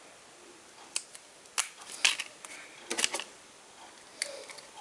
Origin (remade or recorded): recorded